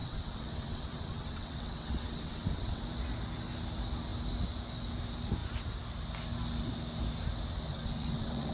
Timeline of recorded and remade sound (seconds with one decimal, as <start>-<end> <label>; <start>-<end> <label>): 0.0-2.8 remade; 2.8-7.7 recorded; 7.7-8.5 remade